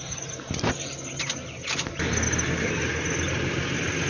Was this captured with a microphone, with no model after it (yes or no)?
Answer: yes